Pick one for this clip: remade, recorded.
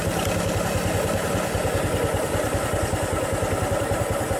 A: recorded